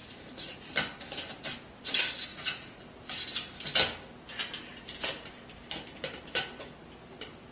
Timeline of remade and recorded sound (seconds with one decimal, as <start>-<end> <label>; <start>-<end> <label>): 0.0-0.6 remade; 0.6-2.3 recorded; 2.3-2.8 remade; 2.8-7.5 recorded